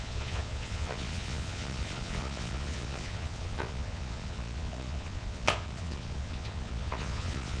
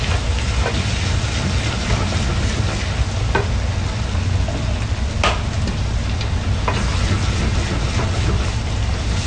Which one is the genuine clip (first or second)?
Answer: second